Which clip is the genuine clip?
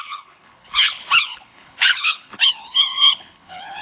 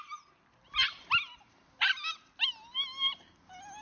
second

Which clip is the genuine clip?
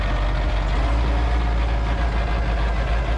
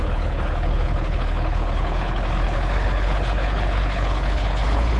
first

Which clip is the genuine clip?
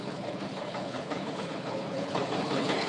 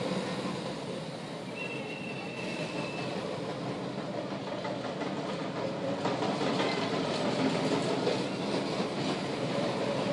second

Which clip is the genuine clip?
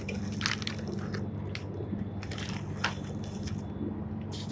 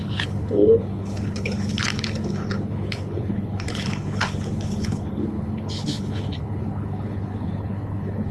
first